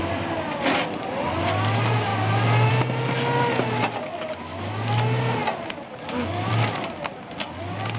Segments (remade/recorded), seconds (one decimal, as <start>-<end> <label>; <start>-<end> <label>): 0.0-8.0 recorded